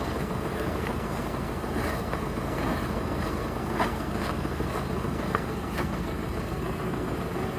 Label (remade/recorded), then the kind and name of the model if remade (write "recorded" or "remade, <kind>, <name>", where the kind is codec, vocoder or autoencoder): remade, codec, SNAC